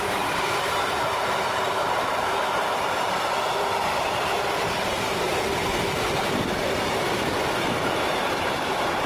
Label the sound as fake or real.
fake